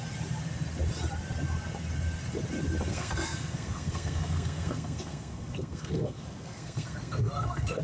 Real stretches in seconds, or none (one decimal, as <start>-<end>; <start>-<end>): 0.0-2.9